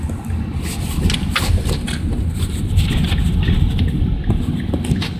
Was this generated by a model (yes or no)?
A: no